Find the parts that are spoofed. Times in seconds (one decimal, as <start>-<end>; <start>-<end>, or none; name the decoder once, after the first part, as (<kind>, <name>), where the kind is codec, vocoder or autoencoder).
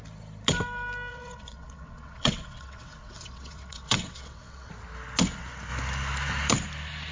1.1-4.7 (vocoder, WaveNeXt)